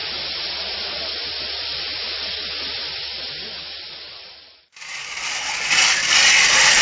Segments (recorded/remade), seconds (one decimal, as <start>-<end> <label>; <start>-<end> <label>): 0.0-6.8 recorded